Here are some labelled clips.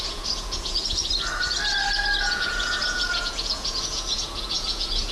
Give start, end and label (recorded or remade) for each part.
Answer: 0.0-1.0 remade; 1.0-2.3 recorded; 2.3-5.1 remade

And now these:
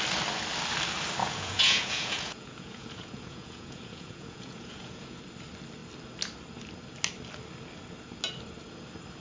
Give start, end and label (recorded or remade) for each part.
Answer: 0.0-1.2 recorded; 1.2-5.2 remade; 5.2-9.2 recorded

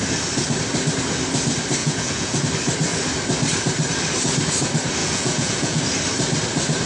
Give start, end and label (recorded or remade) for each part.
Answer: 0.0-1.8 recorded; 1.8-2.4 remade; 2.4-5.0 recorded; 5.0-5.8 remade; 5.8-6.9 recorded